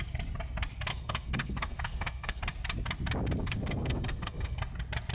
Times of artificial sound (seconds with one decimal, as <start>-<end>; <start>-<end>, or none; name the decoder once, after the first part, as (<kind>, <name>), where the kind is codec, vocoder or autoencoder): 0.9-2.4 (codec, SNAC); 3.4-4.6